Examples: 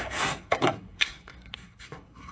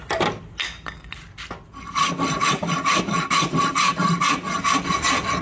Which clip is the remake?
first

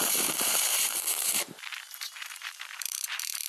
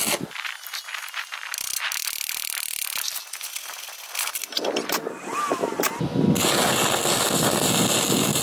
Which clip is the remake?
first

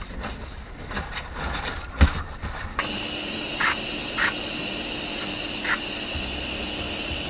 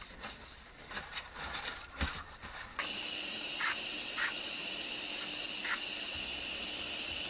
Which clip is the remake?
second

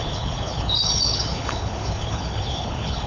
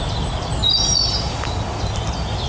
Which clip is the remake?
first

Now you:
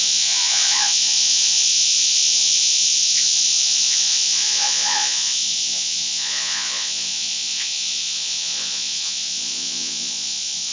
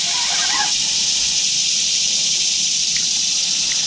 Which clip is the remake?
first